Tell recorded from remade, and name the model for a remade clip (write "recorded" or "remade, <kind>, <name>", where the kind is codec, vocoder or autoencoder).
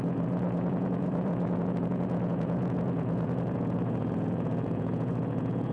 remade, vocoder, Vocos